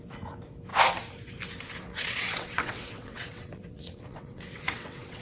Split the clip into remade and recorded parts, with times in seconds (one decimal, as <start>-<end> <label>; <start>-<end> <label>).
0.0-1.9 recorded; 1.9-5.2 remade